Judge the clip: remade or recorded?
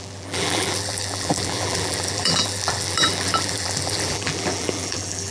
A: remade